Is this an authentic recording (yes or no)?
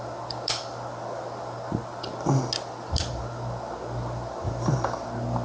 yes